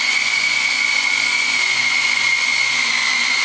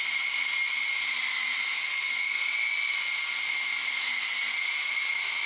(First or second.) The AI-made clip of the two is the first